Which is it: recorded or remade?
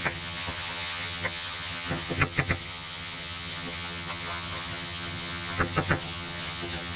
remade